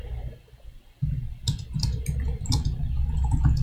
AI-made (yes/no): no